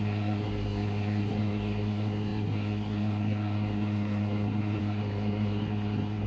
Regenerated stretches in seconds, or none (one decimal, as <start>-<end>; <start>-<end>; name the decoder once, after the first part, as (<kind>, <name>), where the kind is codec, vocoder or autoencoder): 0.0-6.3 (codec, SNAC)